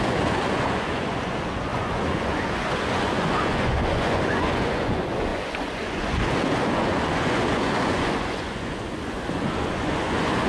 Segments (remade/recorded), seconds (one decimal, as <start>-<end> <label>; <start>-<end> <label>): 0.0-10.5 remade